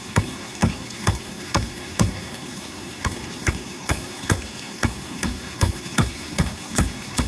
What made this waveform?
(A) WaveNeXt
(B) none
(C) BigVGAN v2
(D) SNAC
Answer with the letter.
D